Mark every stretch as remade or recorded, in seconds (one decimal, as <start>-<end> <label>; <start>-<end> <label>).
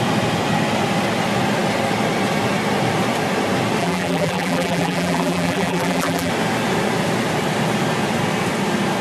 0.0-3.8 recorded; 3.8-6.3 remade; 6.3-9.0 recorded